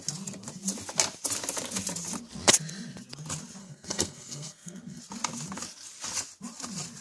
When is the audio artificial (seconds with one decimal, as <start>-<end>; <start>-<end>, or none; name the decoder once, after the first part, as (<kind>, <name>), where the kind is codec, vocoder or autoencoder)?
3.6-5.0 (codec, SNAC)